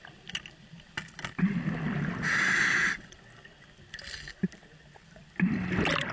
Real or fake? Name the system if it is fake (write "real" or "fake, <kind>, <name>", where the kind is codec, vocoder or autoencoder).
real